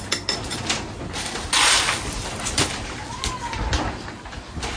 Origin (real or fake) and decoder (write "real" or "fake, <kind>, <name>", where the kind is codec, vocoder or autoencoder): real